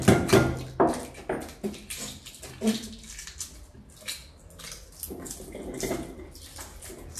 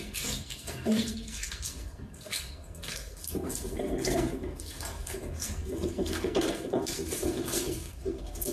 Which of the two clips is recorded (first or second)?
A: first